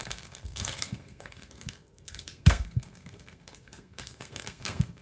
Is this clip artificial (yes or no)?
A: yes